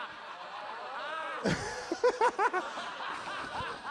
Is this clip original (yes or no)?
no